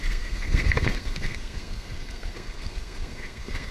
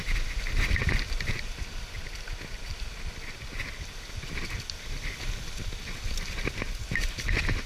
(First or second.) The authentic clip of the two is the second